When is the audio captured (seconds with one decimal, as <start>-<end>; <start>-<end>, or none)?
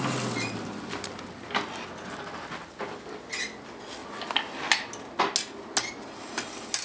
0.0-6.8